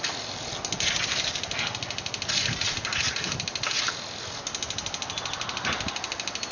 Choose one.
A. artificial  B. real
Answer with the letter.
B